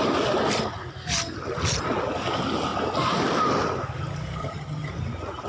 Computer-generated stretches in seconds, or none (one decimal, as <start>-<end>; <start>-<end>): 4.4-4.9